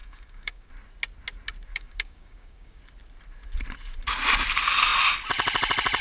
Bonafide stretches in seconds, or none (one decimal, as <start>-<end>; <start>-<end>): 0.7-1.7; 2.8-6.0